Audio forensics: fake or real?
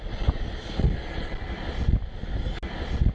real